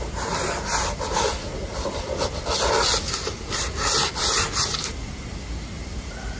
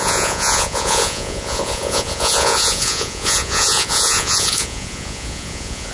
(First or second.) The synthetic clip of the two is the second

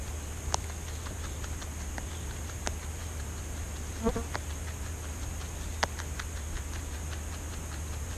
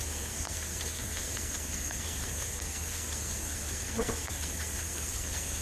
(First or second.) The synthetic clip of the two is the second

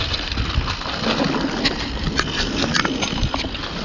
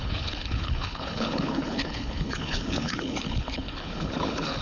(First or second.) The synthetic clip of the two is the second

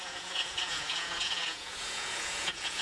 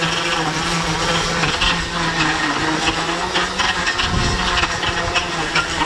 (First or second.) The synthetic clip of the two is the first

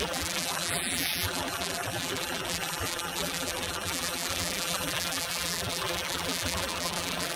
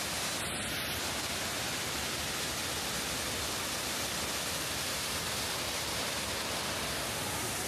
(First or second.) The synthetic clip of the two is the first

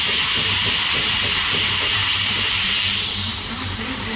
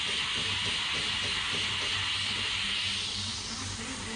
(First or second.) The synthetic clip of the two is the first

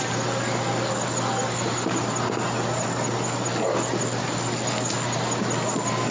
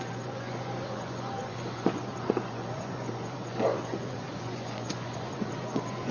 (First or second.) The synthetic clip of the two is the second